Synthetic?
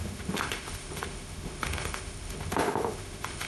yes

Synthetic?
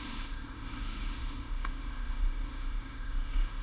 yes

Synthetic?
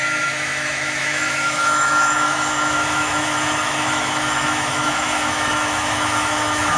yes